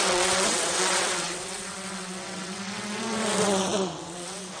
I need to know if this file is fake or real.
fake